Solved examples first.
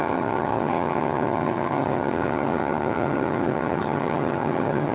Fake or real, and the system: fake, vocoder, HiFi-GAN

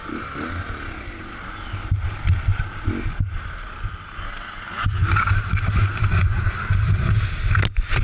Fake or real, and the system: real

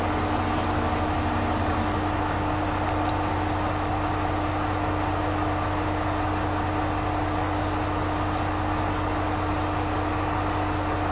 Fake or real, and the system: real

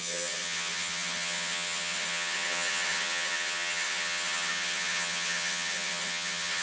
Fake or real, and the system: fake, vocoder, HiFi-GAN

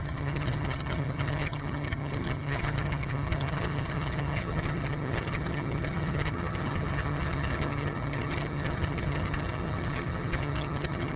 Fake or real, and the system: fake, vocoder, HiFi-GAN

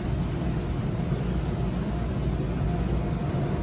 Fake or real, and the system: real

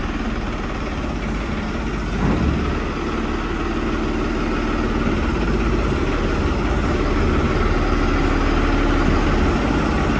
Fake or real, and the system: real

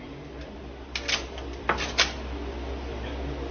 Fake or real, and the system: real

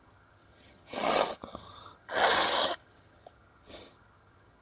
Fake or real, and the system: fake, vocoder, HiFi-GAN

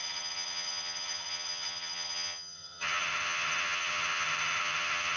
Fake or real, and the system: fake, vocoder, HiFi-GAN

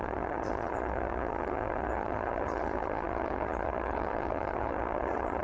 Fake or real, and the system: fake, vocoder, HiFi-GAN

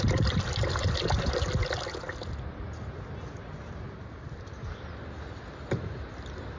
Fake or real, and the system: real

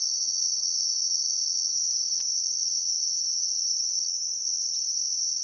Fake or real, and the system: fake, vocoder, HiFi-GAN